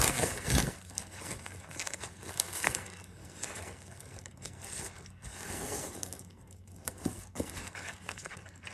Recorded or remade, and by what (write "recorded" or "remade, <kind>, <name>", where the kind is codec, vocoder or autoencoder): remade, codec, SNAC